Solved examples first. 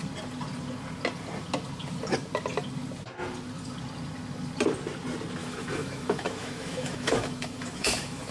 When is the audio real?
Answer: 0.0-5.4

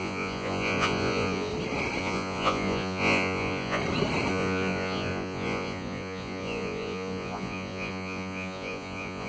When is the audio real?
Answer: 1.5-2.0; 3.8-4.3

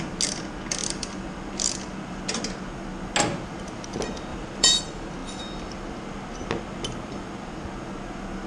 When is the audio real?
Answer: 0.0-0.8; 2.2-4.3; 4.8-8.5